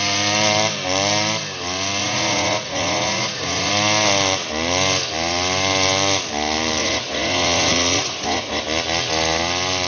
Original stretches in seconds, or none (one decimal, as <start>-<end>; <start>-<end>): 0.0-2.0; 3.7-6.8; 8.6-9.9

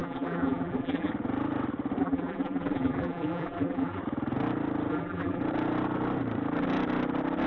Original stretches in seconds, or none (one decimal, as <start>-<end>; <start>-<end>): 1.1-2.0; 4.0-4.9; 5.4-7.5